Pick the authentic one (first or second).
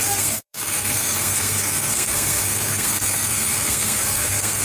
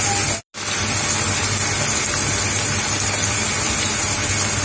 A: second